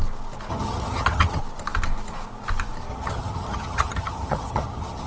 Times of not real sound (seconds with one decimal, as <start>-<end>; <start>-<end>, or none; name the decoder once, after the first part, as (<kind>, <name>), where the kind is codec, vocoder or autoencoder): 0.5-1.4 (vocoder, HiFi-GAN); 2.9-5.1